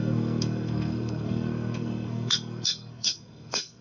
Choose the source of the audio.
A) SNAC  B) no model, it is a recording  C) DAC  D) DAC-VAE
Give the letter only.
A